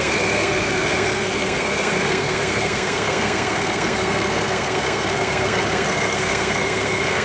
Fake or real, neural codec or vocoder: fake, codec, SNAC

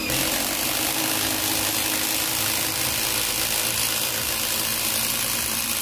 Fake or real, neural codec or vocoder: real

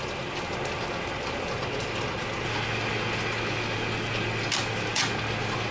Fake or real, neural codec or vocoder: real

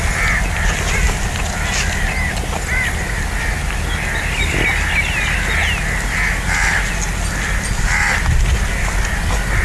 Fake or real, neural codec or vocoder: real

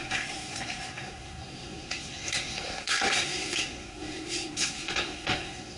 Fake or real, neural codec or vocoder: fake, codec, SNAC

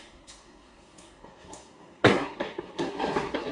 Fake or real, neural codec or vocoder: fake, codec, SNAC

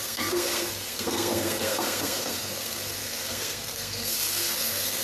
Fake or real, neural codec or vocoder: fake, codec, SNAC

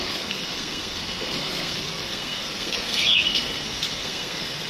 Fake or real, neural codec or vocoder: fake, codec, SNAC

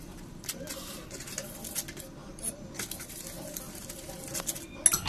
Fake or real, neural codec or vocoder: real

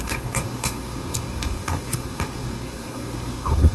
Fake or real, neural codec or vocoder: fake, codec, SNAC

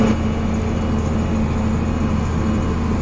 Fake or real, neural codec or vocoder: real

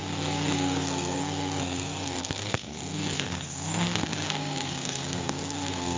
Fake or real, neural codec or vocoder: fake, codec, SNAC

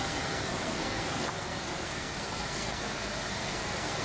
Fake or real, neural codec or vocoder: fake, codec, SNAC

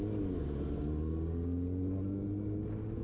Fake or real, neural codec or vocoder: real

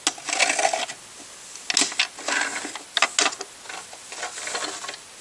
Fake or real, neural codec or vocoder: real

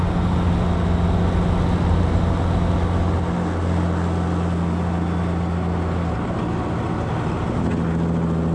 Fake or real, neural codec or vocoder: real